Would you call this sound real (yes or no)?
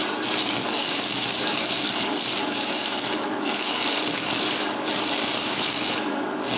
no